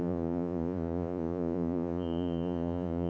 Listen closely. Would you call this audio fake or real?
fake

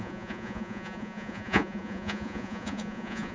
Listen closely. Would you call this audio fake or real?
fake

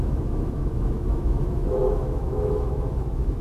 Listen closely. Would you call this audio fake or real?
fake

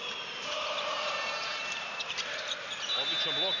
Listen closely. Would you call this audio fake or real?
real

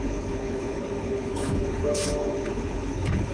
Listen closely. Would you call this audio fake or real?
fake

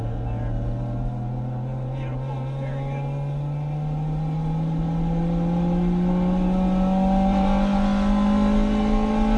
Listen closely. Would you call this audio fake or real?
real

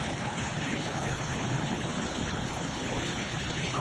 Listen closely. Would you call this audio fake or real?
fake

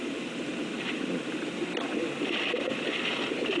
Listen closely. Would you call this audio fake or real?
real